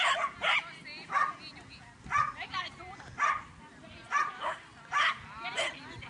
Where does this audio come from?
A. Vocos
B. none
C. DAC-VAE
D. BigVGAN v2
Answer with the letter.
B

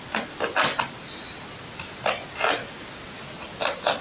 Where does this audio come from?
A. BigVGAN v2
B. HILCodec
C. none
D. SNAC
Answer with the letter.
C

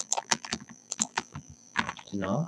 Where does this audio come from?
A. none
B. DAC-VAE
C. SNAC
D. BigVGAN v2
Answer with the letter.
D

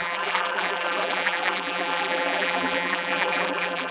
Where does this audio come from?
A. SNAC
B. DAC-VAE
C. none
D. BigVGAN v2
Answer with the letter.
D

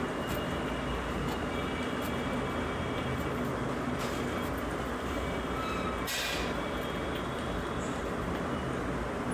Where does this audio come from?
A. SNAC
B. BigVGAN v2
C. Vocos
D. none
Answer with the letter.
D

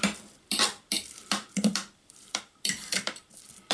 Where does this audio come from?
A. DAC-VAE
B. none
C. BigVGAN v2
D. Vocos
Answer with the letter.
C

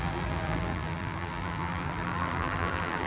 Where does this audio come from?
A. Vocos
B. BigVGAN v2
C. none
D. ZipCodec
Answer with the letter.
B